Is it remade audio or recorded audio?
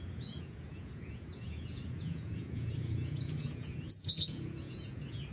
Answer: remade